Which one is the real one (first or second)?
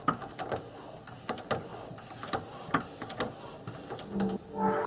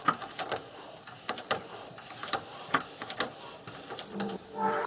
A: first